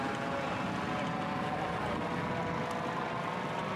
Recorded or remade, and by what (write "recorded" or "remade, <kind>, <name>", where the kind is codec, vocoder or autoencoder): recorded